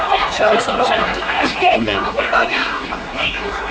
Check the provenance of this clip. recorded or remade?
remade